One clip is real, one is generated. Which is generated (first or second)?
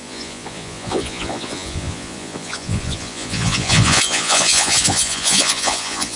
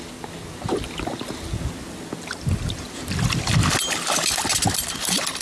first